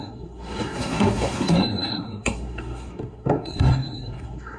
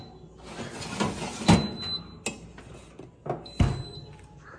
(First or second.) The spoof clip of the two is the first